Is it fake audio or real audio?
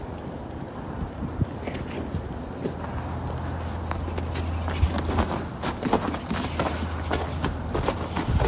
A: real